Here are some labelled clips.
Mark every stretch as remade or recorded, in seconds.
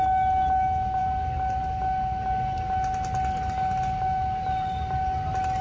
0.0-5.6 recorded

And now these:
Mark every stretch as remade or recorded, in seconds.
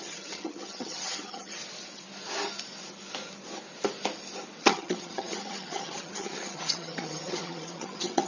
0.0-1.6 remade; 1.6-4.6 recorded; 4.6-8.3 remade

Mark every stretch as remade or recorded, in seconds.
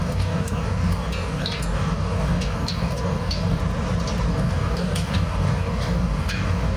0.0-3.6 remade; 3.6-4.3 recorded; 4.3-6.8 remade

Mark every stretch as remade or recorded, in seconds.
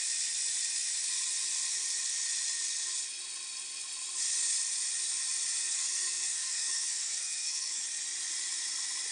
0.0-5.6 recorded; 5.6-7.8 remade; 7.8-9.1 recorded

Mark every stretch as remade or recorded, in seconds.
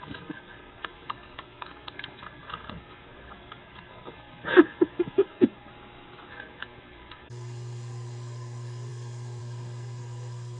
0.0-5.7 remade; 5.7-6.3 recorded; 6.3-10.6 remade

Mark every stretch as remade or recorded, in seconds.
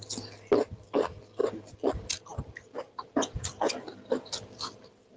0.0-1.4 recorded; 1.4-1.9 remade; 1.9-2.3 recorded; 2.3-3.1 remade; 3.1-5.2 recorded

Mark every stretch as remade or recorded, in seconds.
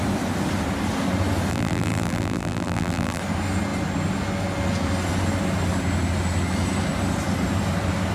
0.0-1.5 recorded; 1.5-3.2 remade; 3.2-8.1 recorded